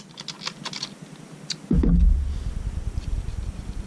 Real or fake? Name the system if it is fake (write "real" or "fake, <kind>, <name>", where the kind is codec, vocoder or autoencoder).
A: real